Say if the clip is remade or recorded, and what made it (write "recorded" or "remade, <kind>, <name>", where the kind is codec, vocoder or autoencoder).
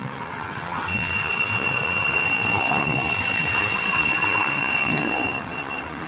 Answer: remade, vocoder, WaveNeXt